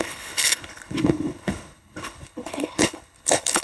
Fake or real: fake